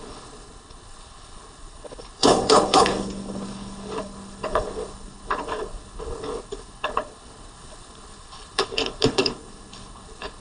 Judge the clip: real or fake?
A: fake